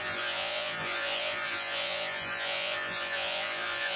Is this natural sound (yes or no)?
no